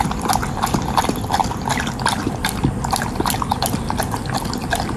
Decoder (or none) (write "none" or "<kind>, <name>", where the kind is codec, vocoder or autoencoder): none